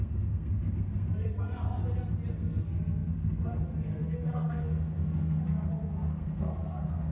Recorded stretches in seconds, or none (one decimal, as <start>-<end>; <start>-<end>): 1.8-2.3